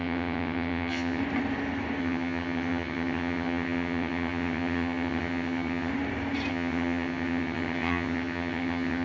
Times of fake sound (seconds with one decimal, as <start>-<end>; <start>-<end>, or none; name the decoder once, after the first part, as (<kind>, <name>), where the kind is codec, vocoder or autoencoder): 0.0-1.2 (vocoder, HiFi-GAN); 2.0-5.9; 6.5-9.0